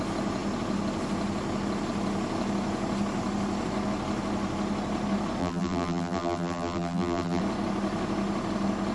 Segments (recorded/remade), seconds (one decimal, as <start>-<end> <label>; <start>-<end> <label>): 0.0-5.4 recorded; 5.4-7.4 remade; 7.4-8.9 recorded